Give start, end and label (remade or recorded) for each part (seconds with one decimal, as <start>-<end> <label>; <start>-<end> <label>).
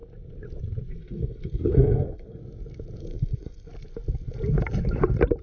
0.0-1.0 recorded; 1.0-2.4 remade; 2.4-3.0 recorded; 3.0-3.7 remade; 3.7-5.4 recorded